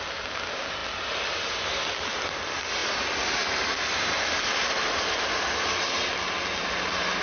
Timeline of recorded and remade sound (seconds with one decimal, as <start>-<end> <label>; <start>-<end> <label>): 0.0-7.2 recorded